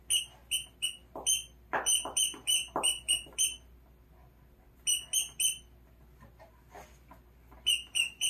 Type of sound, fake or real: real